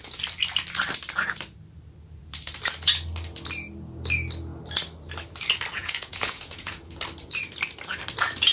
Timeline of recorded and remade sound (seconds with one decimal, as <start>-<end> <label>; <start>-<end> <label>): 0.0-5.8 recorded; 5.8-6.8 remade; 6.8-8.5 recorded